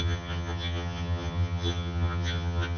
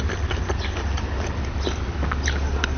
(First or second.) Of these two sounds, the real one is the second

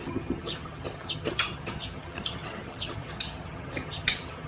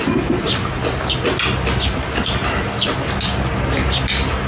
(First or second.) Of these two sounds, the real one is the second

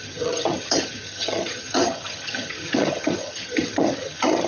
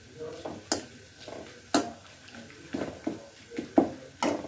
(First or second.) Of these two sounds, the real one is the second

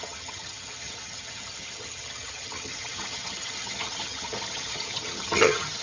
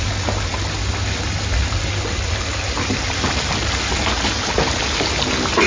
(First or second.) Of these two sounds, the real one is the second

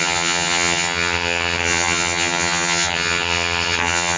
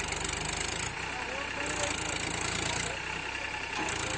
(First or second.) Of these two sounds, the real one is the second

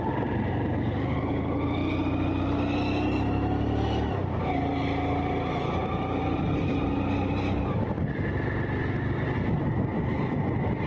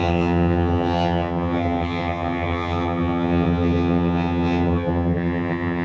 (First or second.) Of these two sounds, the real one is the first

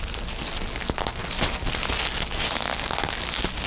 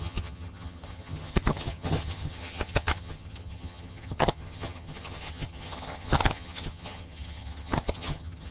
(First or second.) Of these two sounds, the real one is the first